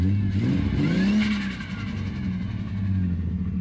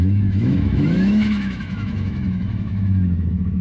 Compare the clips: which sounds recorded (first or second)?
first